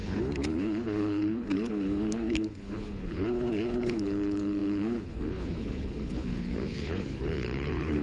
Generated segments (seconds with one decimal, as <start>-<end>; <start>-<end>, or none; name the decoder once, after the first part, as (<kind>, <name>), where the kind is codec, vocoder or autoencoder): 0.0-8.0 (codec, HILCodec)